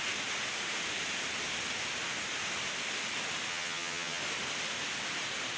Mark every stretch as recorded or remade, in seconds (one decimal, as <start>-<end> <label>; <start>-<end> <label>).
0.0-3.5 recorded; 3.5-4.2 remade; 4.2-5.6 recorded